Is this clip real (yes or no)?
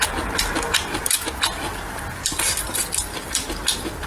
yes